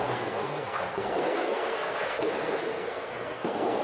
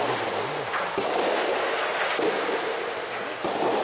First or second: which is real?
second